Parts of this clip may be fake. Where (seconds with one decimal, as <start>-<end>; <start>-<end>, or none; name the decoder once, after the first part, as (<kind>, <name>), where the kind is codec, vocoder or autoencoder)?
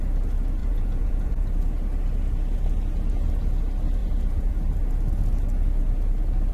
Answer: 0.6-1.3 (vocoder, Vocos); 4.0-4.5